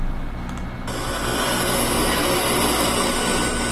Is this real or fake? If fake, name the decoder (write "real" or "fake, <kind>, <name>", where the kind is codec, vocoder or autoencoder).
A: real